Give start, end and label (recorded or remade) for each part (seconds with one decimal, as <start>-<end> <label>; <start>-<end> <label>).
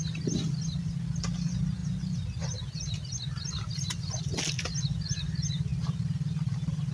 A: 0.0-5.7 recorded; 5.7-6.9 remade